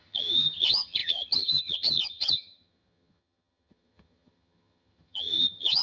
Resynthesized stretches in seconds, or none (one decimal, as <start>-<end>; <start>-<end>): 0.0-5.8